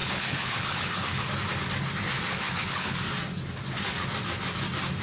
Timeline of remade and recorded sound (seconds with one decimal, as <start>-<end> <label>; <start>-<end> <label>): 0.0-1.3 remade; 1.3-2.3 recorded; 2.3-3.0 remade; 3.0-5.0 recorded